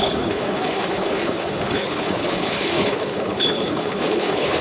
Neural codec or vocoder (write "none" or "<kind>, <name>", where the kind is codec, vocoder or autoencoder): codec, HILCodec